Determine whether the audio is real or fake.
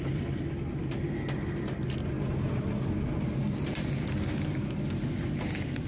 real